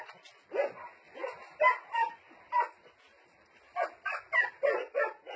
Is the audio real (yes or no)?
yes